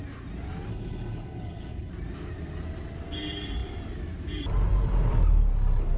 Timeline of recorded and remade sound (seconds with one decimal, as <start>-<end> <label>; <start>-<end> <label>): 0.0-0.7 recorded; 0.7-1.9 remade; 1.9-6.0 recorded